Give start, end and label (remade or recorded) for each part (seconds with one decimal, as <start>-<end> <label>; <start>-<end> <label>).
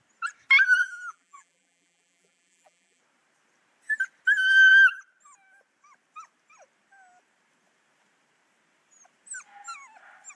0.0-0.8 recorded; 0.8-3.0 remade; 3.0-10.3 recorded